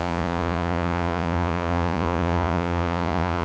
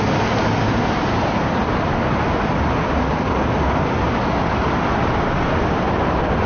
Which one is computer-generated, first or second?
first